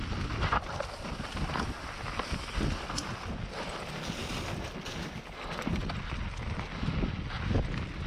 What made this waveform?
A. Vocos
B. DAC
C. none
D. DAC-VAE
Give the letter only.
C